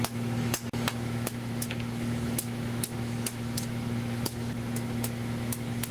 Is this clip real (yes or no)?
no